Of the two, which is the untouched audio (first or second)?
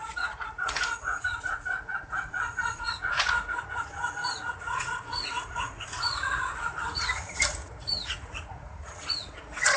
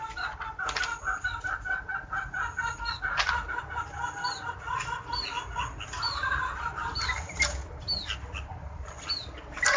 second